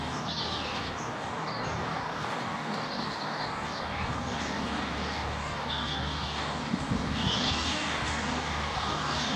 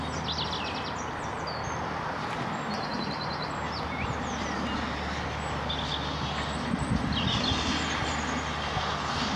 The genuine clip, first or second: second